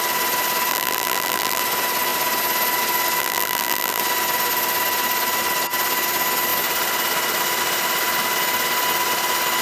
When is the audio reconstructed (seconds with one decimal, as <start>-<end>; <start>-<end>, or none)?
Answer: 0.7-1.6; 3.2-4.0